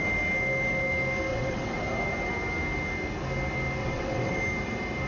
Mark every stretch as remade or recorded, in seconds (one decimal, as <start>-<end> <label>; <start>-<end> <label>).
0.0-1.3 recorded; 1.3-1.8 remade; 1.8-3.8 recorded; 3.8-4.4 remade; 4.4-5.1 recorded